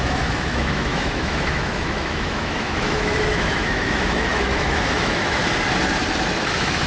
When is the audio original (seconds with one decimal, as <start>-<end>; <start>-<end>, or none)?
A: 5.4-6.4